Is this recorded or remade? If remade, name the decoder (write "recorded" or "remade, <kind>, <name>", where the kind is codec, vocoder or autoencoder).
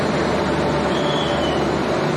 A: recorded